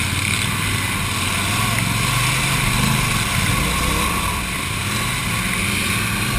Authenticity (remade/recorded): recorded